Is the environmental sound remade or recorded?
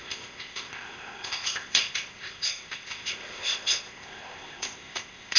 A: remade